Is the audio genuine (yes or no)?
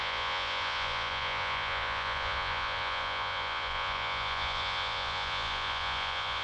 no